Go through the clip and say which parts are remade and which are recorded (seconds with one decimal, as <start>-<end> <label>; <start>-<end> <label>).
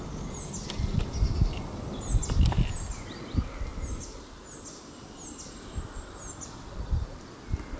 0.0-7.8 recorded